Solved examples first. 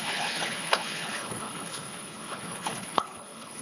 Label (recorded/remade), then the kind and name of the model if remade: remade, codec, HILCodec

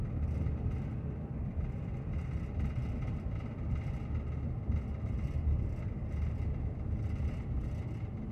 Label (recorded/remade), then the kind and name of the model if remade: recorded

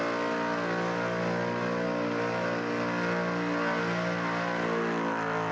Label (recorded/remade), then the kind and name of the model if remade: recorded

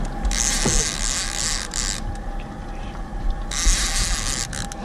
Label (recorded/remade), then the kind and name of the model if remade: recorded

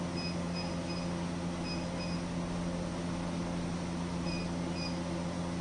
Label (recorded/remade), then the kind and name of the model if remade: recorded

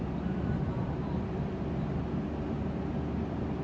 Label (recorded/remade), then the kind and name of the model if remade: recorded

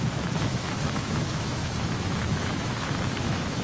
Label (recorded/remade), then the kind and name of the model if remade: remade, autoencoder, DAC-VAE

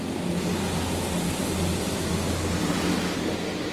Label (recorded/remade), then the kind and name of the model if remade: recorded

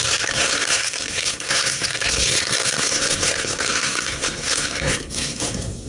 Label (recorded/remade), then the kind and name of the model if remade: remade, codec, SNAC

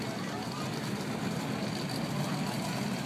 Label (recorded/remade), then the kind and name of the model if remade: recorded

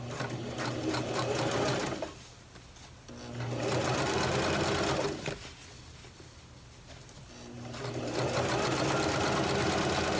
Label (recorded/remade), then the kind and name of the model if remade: recorded